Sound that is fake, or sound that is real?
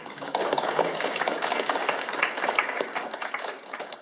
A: fake